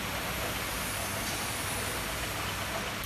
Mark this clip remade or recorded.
recorded